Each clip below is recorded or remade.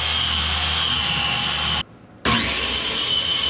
recorded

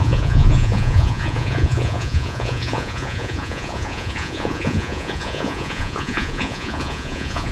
remade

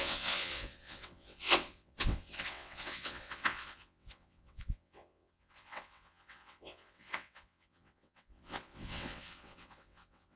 remade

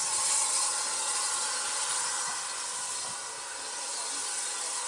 recorded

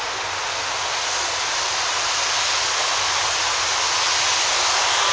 recorded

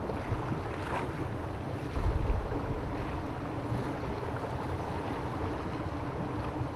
recorded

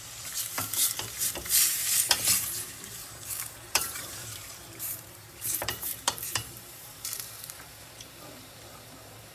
remade